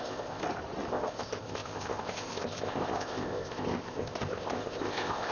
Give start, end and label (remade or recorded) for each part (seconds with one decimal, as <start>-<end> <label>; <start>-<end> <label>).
0.0-0.4 remade; 0.4-0.9 recorded; 0.9-5.3 remade